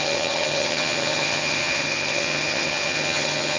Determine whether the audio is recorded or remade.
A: remade